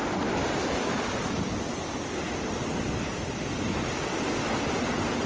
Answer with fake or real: real